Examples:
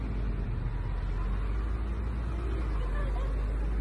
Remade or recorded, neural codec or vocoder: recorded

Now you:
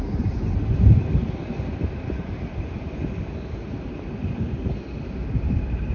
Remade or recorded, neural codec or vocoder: recorded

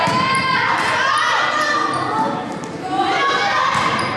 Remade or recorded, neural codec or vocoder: recorded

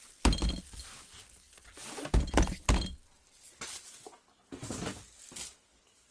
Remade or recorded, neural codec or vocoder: recorded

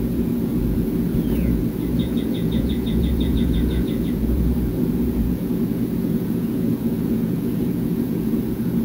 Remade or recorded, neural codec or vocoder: remade, vocoder, Vocos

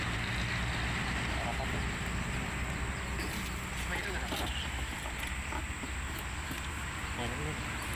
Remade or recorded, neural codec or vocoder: recorded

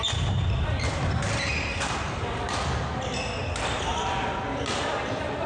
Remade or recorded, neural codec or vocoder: recorded